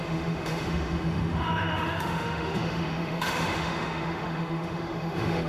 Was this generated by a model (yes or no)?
yes